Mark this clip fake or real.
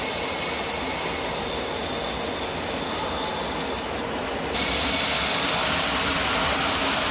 real